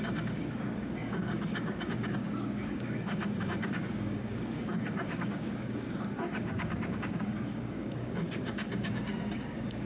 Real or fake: fake